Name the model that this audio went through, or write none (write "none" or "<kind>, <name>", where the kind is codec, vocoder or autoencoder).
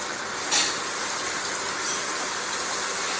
vocoder, BigVGAN v2